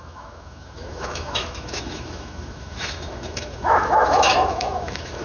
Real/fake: fake